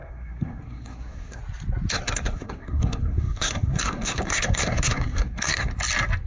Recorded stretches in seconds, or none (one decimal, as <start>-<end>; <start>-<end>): 1.4-1.9; 5.7-6.3